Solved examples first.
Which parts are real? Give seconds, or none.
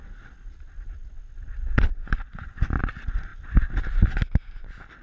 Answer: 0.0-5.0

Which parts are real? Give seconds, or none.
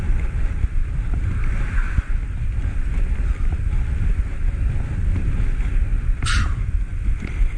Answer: 0.0-7.6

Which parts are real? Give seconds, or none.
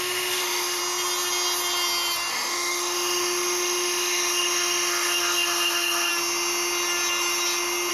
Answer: 0.8-2.3; 6.1-7.9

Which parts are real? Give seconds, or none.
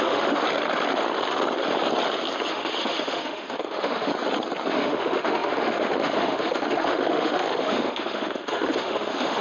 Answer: 0.4-2.5; 4.1-4.7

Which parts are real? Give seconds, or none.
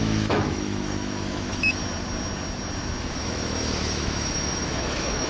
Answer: 1.8-3.0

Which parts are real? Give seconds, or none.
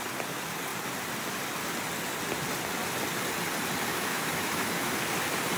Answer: 0.0-3.9; 4.9-5.6